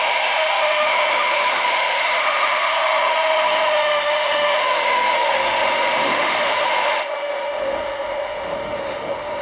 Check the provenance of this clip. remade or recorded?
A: remade